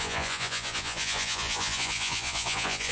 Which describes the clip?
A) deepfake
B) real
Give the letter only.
A